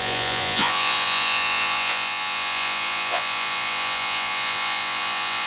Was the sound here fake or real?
fake